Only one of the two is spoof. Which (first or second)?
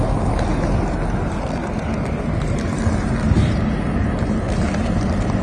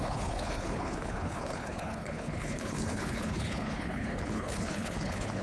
second